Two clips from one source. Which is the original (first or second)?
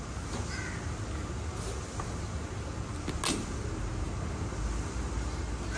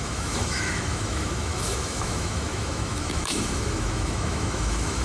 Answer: first